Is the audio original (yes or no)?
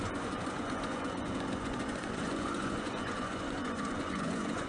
no